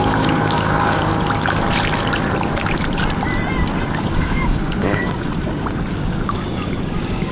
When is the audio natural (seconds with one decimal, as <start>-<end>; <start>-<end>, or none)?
1.1-4.0; 5.0-5.9